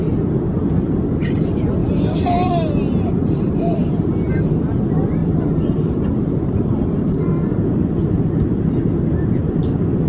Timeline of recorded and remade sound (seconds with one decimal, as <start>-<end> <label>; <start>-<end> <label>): 0.0-1.8 recorded; 1.8-4.1 remade; 4.1-5.2 recorded; 5.2-8.3 remade; 8.3-10.1 recorded